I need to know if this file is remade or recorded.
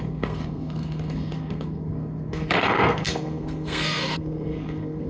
remade